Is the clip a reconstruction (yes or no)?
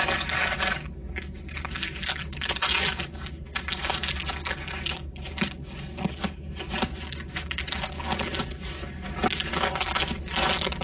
no